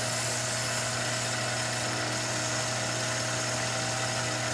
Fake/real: real